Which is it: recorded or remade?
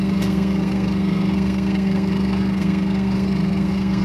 remade